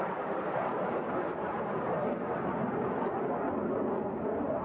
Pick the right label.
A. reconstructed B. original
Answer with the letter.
B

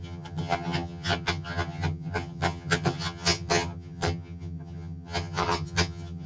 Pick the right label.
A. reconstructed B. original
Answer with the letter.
A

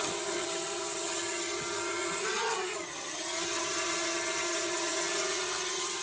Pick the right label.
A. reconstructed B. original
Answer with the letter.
A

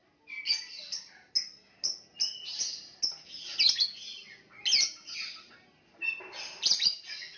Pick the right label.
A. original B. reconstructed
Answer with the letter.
A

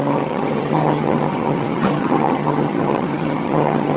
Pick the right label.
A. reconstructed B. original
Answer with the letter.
A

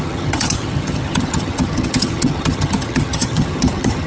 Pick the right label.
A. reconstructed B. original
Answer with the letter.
A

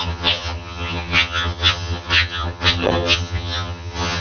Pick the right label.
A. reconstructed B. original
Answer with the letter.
A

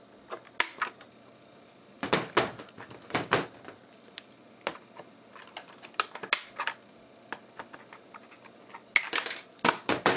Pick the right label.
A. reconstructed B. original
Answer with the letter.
B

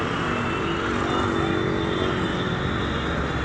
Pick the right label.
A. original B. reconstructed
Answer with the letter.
A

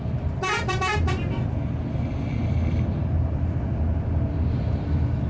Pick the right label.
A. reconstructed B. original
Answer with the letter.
B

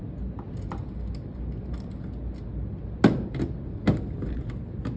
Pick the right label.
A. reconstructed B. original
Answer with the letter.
B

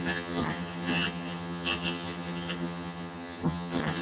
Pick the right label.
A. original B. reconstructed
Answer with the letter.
B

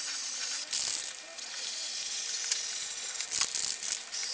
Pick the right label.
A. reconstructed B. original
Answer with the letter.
B